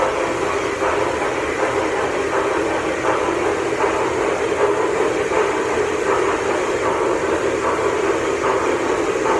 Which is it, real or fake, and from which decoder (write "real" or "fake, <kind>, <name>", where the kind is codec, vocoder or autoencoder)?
real